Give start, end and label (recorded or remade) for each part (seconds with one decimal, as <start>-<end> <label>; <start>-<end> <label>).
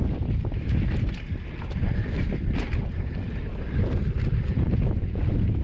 0.0-4.5 recorded; 4.5-5.6 remade